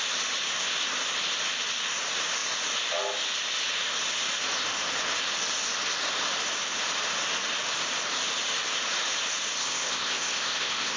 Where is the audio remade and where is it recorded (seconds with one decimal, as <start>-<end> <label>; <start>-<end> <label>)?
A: 0.0-9.6 recorded; 9.6-11.0 remade